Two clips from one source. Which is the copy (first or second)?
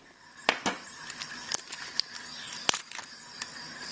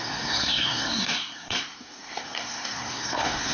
second